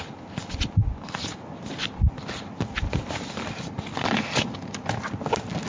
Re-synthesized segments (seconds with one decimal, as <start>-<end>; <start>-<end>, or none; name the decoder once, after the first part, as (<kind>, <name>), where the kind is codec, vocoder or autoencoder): none